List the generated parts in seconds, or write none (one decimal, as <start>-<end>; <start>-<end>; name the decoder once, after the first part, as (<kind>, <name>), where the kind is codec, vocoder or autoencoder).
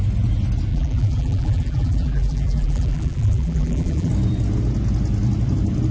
0.7-4.1 (vocoder, BigVGAN v2)